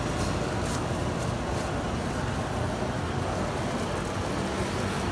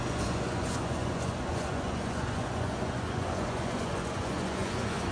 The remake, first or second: second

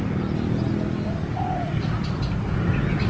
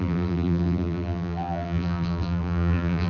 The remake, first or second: second